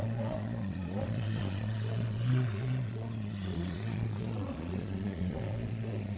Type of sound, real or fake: fake